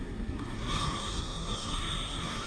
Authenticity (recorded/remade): remade